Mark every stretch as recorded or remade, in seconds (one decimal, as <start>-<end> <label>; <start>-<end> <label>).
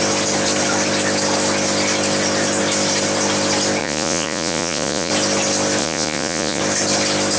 0.0-3.8 recorded; 3.8-5.1 remade; 5.1-5.8 recorded; 5.8-6.6 remade; 6.6-7.4 recorded